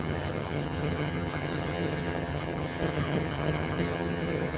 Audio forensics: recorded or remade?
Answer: remade